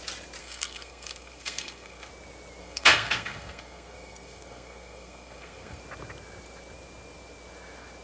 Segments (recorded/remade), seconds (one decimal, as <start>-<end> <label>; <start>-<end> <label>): 0.0-0.4 recorded; 0.4-2.1 remade; 2.1-2.6 recorded; 2.6-5.8 remade; 5.8-8.0 recorded